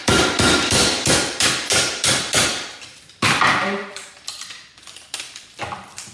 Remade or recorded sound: remade